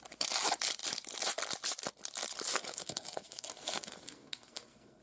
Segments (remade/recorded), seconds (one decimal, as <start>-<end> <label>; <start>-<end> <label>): 0.0-2.5 recorded; 2.5-5.0 remade